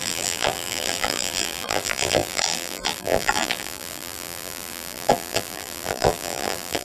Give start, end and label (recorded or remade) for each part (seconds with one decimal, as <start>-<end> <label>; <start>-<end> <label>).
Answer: 0.0-6.8 remade

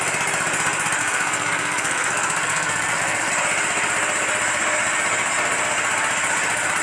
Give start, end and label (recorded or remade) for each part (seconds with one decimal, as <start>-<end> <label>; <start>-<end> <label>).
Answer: 0.0-1.0 recorded; 1.0-3.3 remade; 3.3-6.8 recorded